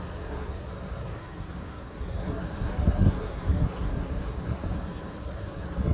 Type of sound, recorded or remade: remade